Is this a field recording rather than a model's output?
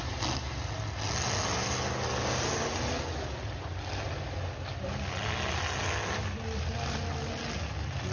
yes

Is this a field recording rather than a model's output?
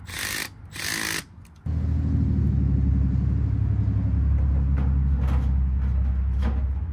yes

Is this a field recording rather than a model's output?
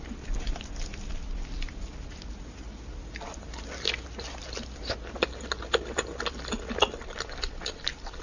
yes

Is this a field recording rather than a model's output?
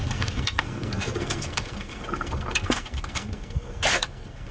no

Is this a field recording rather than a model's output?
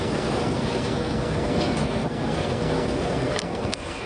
no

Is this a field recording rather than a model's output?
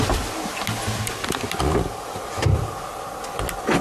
yes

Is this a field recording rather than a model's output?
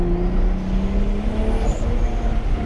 yes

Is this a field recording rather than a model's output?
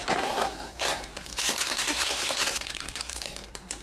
no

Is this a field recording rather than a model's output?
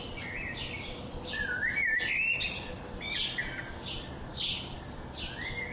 yes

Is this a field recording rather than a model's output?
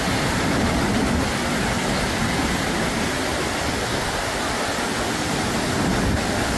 yes